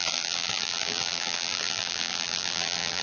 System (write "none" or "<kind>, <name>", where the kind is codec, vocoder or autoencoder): vocoder, BigVGAN v2